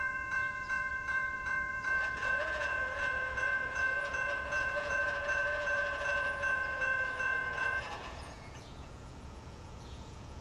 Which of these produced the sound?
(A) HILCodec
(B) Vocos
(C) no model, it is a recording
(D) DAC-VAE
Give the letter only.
B